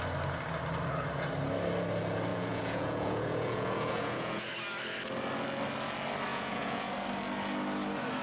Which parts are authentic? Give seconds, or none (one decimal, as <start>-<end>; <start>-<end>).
0.0-2.3; 4.5-6.3; 6.9-8.2